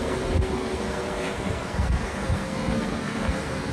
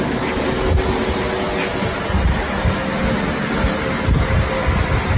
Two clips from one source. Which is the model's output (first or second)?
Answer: first